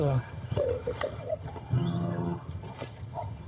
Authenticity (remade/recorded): remade